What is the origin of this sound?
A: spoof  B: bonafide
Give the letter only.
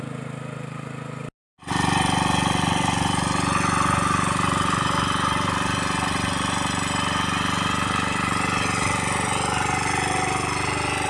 B